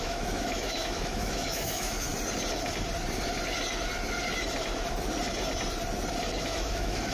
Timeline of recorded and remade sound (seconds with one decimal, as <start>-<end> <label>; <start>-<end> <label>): 0.0-2.1 remade; 2.1-6.4 recorded; 6.4-7.1 remade